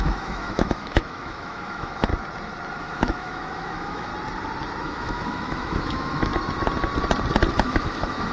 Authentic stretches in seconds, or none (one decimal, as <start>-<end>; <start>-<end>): 2.1-2.8; 4.1-4.8; 6.3-7.5